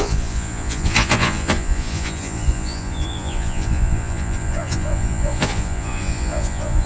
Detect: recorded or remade remade